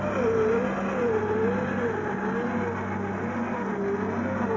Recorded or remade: recorded